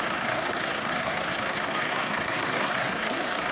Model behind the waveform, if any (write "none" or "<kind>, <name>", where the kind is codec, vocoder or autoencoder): codec, SNAC